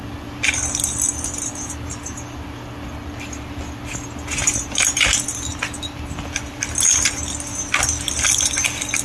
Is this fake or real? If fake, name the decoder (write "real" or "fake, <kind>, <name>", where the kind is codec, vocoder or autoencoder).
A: real